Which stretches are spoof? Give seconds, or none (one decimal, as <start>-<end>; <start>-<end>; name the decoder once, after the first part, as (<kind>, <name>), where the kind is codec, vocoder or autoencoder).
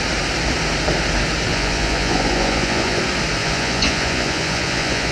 1.5-3.0 (vocoder, Vocos); 3.4-5.1